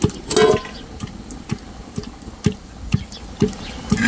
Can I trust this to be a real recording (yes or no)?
yes